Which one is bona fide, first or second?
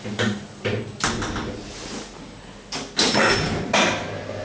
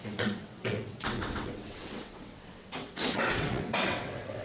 first